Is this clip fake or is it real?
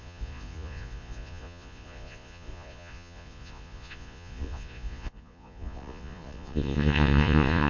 fake